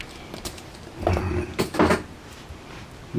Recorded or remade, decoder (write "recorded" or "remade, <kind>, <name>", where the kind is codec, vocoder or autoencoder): recorded